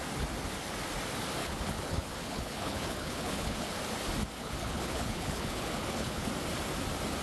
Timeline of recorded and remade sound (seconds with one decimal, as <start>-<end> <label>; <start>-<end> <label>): 0.0-1.4 recorded; 1.4-3.8 remade; 3.8-4.4 recorded; 4.4-6.3 remade; 6.3-7.2 recorded